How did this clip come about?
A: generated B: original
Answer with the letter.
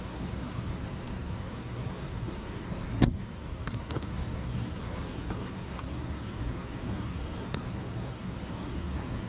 A